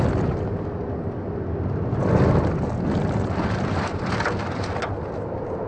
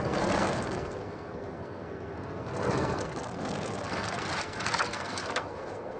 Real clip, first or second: first